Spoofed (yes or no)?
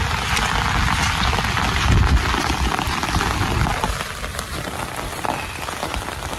no